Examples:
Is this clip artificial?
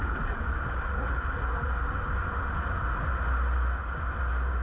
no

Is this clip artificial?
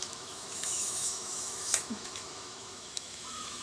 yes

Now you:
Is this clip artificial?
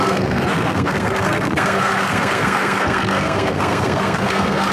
yes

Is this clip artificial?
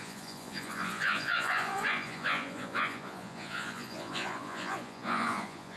yes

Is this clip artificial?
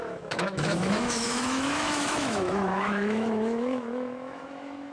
yes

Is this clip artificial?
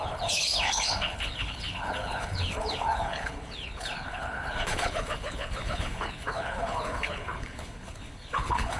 yes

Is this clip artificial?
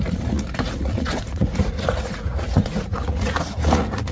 yes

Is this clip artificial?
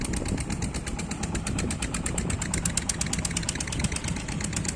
no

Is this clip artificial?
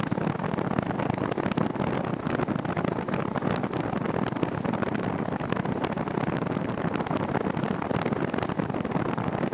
no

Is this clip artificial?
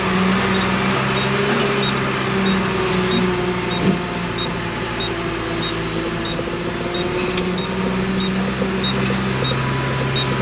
no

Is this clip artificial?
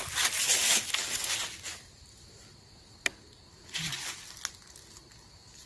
no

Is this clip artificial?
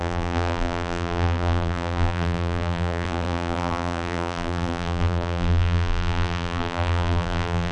yes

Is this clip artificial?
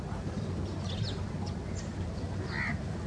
no